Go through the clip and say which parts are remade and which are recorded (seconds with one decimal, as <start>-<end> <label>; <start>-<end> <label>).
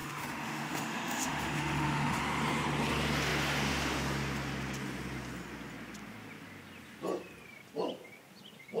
0.0-2.2 remade; 2.2-8.8 recorded